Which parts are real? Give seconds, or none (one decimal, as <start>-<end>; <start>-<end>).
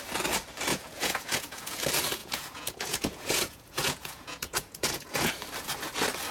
0.0-0.7; 1.8-2.2; 5.3-6.3